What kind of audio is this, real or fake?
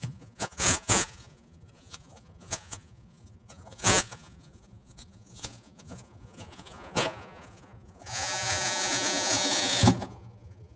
fake